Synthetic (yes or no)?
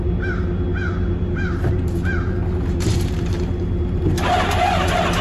yes